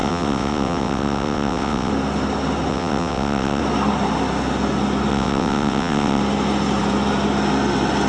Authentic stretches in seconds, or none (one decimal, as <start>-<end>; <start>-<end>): 1.9-2.7; 3.6-5.1; 6.2-8.1